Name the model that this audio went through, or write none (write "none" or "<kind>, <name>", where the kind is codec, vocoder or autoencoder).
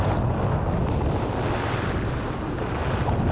none